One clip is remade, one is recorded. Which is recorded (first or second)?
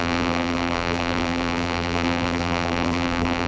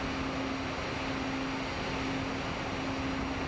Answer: second